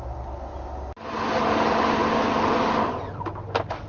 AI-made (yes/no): no